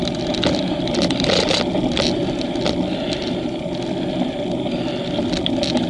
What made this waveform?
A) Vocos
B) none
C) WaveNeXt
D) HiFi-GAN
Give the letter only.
B